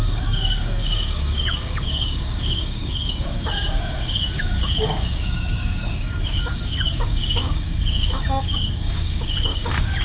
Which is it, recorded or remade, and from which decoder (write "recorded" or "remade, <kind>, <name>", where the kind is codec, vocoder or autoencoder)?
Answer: remade, codec, DAC